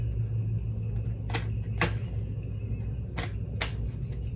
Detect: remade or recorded recorded